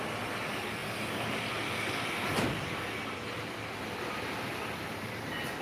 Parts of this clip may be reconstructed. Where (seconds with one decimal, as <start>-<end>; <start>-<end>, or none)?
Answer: none